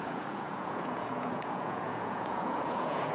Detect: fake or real fake